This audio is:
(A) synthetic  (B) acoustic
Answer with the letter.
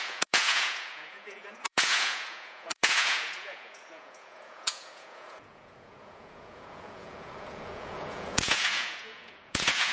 A